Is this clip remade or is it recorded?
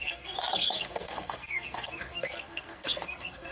remade